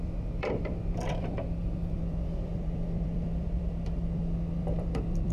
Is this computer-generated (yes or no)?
yes